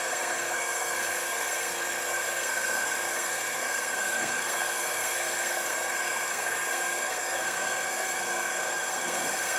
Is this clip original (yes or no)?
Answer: no